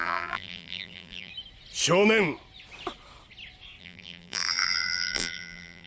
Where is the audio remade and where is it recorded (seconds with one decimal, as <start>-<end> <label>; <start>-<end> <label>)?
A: 0.0-1.3 remade; 1.3-3.8 recorded; 3.8-5.9 remade

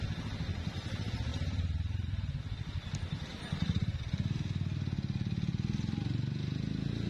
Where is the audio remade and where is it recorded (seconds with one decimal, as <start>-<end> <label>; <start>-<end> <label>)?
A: 0.0-1.3 recorded; 1.3-2.4 remade; 2.4-3.3 recorded; 3.3-4.0 remade; 4.0-7.1 recorded